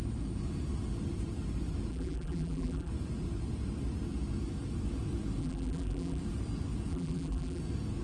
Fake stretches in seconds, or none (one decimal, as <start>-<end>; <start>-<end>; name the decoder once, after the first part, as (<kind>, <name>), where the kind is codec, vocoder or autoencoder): 1.9-2.9 (vocoder, BigVGAN v2); 5.4-6.2; 6.9-7.6